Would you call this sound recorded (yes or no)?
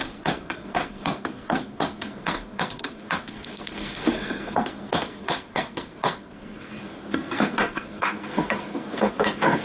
no